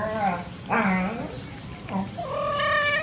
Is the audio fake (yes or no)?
no